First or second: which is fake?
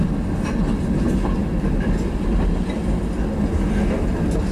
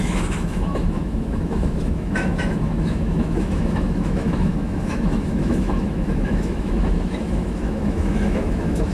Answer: second